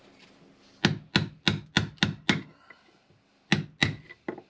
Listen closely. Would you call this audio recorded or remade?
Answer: recorded